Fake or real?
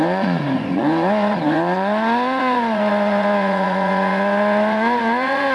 fake